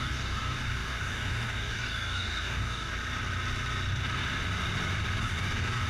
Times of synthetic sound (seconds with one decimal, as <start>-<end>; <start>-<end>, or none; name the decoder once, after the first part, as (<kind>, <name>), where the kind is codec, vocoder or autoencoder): 0.0-2.9 (codec, DAC); 5.2-5.9